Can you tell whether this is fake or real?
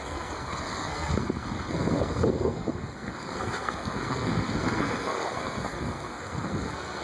fake